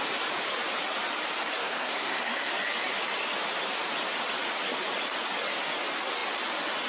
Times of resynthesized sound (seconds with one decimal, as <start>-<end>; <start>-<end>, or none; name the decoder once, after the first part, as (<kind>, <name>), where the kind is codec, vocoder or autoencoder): 1.6-2.5 (codec, SNAC)

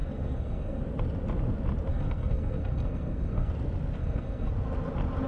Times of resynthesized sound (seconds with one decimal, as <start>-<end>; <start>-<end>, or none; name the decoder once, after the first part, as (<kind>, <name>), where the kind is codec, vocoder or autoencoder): 0.0-0.8 (codec, SNAC); 1.9-3.5; 4.0-4.5

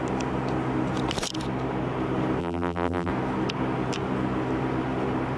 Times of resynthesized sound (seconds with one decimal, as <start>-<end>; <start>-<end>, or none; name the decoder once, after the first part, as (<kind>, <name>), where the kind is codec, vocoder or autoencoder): 2.4-3.1 (vocoder, BigVGAN v2)